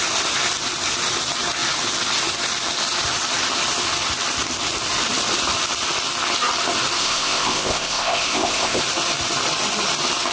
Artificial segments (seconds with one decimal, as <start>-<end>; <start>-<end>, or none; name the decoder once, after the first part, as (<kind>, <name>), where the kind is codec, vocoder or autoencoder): 7.0-8.8 (codec, ZipCodec)